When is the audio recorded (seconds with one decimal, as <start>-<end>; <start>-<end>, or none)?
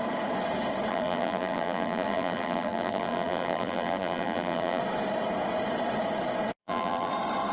0.0-0.9; 4.8-6.6; 7.1-7.5